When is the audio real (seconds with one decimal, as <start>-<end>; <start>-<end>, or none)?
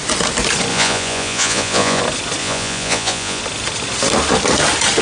0.0-0.7; 2.0-2.4; 3.4-5.0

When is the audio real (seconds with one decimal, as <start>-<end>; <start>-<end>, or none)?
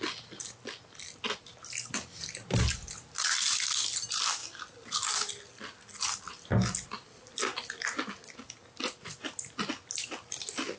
0.0-10.8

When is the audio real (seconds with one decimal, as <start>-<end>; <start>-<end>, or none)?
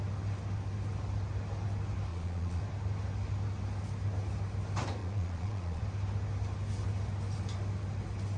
0.0-2.1; 2.6-5.0; 5.8-8.4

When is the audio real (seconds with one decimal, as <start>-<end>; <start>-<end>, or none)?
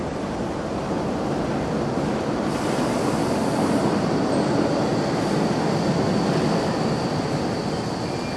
0.0-8.4